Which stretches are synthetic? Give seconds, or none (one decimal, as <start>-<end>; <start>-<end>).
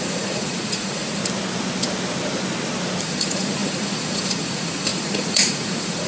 0.0-1.2; 3.0-6.1